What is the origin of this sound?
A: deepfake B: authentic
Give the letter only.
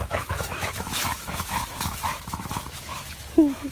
A